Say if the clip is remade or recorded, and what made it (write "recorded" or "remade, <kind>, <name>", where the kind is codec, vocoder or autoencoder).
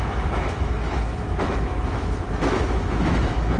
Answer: remade, autoencoder, DAC-VAE